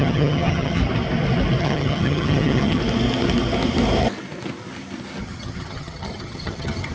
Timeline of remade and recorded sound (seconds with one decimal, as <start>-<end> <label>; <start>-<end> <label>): 0.0-0.8 remade; 0.8-1.6 recorded; 1.6-2.8 remade; 2.8-5.2 recorded; 5.2-6.9 remade